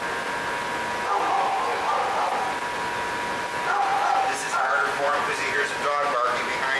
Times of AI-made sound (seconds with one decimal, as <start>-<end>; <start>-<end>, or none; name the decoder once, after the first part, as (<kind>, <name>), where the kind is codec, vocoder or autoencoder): 3.9-5.7 (vocoder, Vocos)